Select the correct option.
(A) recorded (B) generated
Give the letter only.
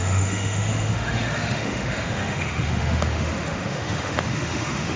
B